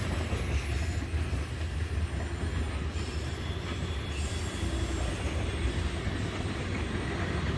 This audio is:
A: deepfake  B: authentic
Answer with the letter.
B